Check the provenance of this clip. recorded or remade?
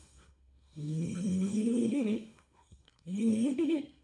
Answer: remade